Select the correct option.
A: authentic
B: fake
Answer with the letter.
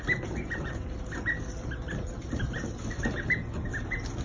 A